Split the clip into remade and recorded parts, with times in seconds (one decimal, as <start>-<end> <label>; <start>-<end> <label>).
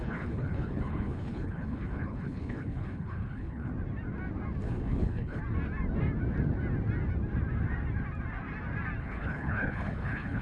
0.0-3.7 remade; 3.7-4.6 recorded; 4.6-5.4 remade; 5.4-9.0 recorded; 9.0-10.4 remade